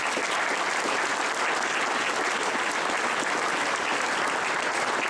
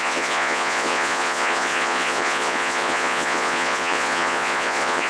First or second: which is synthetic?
second